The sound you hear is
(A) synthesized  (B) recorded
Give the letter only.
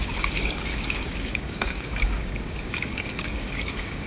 A